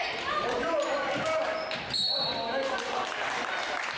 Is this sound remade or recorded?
recorded